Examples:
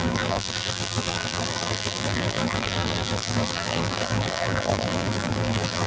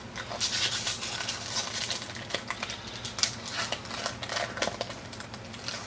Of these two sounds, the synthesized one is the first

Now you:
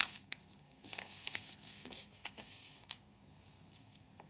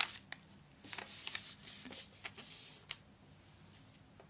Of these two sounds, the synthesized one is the first